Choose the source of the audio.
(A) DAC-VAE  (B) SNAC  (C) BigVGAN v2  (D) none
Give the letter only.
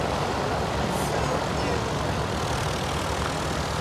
D